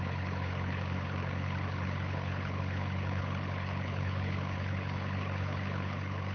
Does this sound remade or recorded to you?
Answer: remade